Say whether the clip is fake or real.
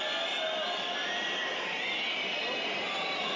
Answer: real